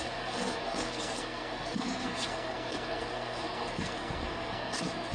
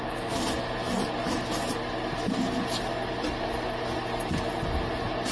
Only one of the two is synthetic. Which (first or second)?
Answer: first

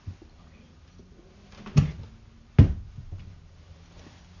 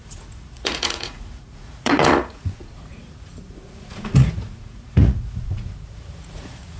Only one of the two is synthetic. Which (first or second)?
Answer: second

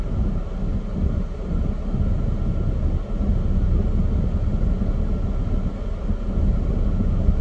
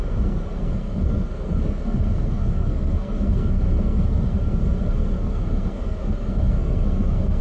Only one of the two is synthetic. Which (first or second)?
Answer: second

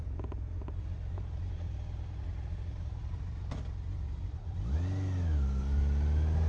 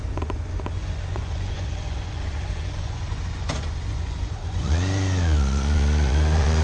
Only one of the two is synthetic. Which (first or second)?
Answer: second